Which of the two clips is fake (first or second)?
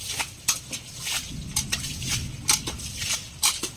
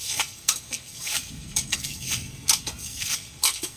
second